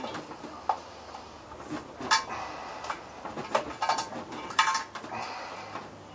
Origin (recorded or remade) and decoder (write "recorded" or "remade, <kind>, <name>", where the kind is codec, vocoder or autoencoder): recorded